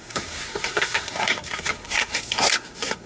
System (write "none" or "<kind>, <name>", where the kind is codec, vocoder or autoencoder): codec, SNAC